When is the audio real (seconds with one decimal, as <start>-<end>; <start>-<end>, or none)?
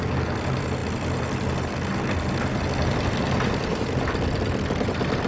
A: 0.0-5.3